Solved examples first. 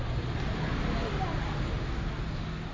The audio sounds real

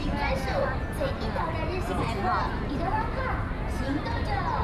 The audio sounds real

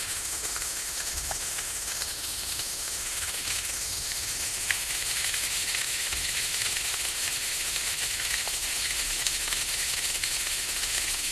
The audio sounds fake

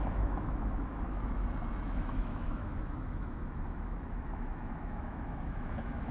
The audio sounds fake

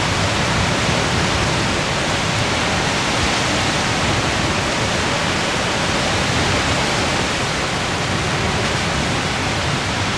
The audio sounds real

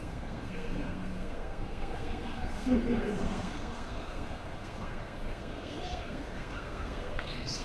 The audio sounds fake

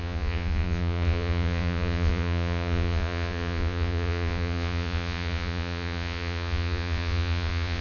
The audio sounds fake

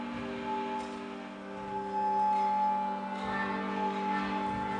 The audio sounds real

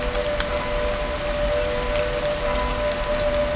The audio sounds real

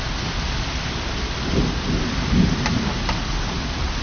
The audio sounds real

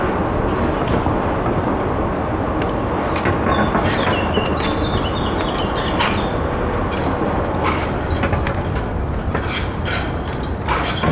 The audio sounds real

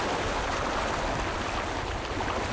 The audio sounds real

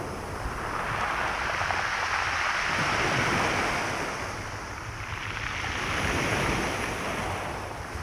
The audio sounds real